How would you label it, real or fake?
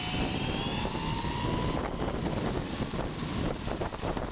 real